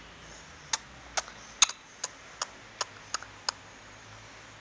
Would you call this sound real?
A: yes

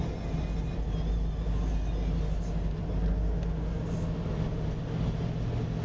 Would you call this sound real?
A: yes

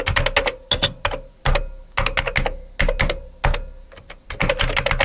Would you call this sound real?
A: yes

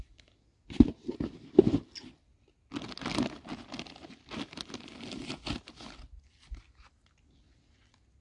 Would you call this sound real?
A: yes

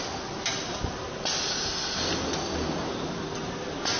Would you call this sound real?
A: yes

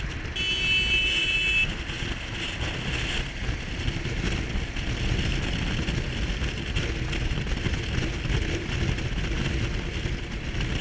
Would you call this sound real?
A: yes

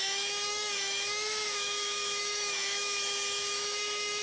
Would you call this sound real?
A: no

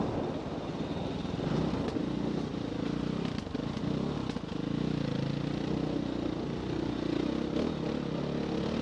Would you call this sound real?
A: yes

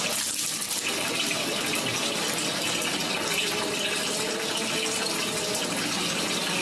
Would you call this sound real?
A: yes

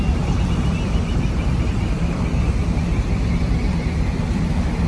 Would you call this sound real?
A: yes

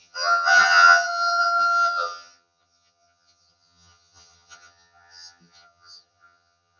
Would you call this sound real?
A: no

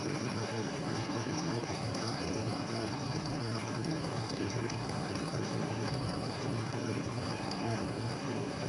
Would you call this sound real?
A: no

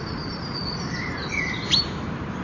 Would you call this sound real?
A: yes